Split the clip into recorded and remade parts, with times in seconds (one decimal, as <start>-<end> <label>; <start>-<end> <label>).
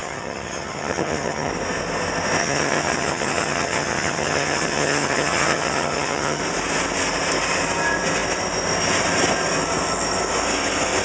0.0-1.5 remade; 1.5-2.4 recorded; 2.4-6.4 remade; 6.4-11.0 recorded